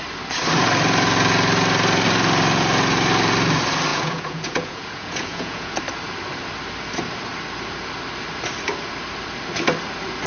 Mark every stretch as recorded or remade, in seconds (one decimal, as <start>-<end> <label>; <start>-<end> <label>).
0.0-3.9 recorded; 3.9-5.8 remade; 5.8-10.3 recorded